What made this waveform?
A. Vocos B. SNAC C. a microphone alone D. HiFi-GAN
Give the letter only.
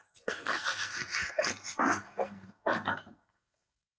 B